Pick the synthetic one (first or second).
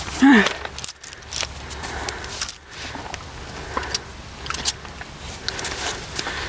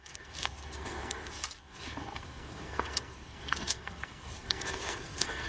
second